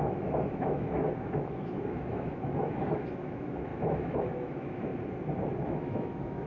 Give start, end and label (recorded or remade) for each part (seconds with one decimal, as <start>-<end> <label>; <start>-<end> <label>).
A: 0.0-4.9 remade; 4.9-5.6 recorded; 5.6-6.5 remade